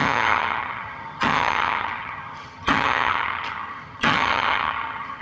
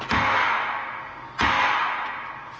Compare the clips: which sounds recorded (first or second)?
second